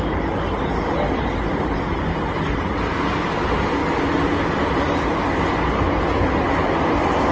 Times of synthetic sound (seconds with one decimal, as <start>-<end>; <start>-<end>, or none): none